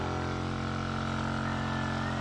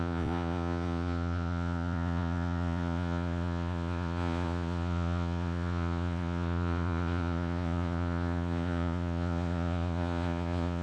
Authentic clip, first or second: first